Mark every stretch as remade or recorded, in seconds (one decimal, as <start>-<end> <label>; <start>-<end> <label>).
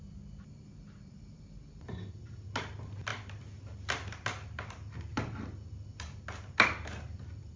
0.0-7.6 recorded